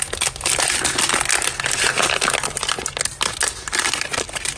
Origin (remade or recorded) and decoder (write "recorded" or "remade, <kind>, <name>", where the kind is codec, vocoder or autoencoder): recorded